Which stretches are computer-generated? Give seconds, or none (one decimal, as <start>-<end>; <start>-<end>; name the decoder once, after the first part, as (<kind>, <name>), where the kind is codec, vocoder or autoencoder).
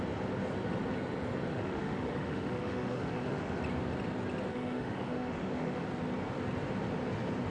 1.5-3.6 (autoencoder, DAC-VAE); 4.5-5.8